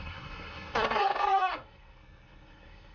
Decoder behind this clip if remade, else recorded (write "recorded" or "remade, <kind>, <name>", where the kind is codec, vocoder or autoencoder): remade, codec, SNAC